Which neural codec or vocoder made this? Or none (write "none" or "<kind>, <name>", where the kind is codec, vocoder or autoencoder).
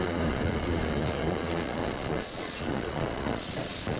vocoder, Vocos